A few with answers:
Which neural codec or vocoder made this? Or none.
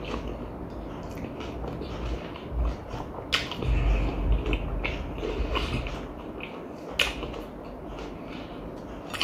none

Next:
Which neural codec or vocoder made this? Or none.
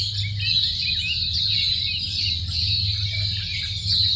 none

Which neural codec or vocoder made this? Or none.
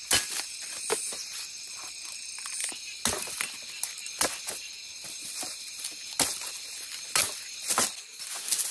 none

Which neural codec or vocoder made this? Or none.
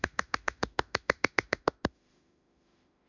autoencoder, DAC-VAE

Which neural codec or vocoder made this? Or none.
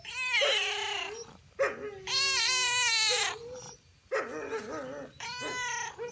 none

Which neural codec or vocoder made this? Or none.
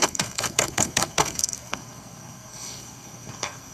codec, SNAC